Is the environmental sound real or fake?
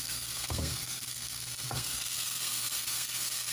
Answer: fake